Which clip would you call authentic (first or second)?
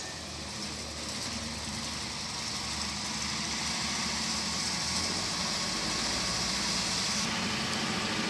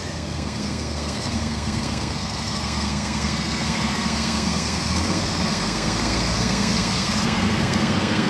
first